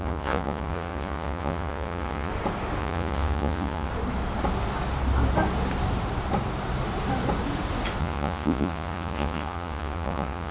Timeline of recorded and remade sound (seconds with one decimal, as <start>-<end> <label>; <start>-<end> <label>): 0.0-2.3 remade; 2.3-2.8 recorded; 2.8-3.9 remade; 3.9-8.0 recorded; 8.0-10.5 remade